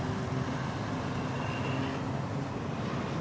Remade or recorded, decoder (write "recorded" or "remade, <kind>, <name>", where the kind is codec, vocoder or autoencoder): recorded